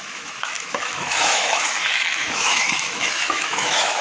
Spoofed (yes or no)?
yes